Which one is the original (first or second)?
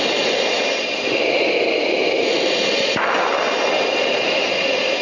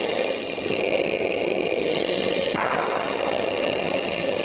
first